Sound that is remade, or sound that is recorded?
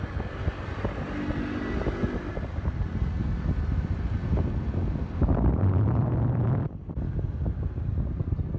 recorded